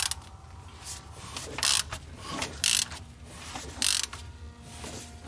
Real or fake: real